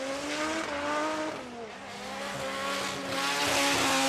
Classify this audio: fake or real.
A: real